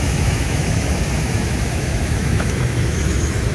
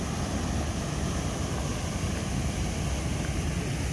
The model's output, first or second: first